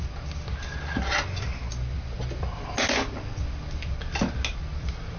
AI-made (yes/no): no